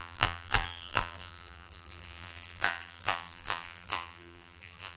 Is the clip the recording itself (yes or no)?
no